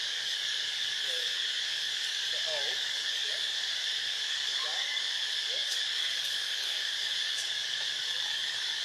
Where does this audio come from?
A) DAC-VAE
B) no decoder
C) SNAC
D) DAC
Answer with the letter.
D